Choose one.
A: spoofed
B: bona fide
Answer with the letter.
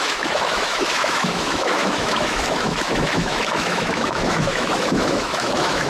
A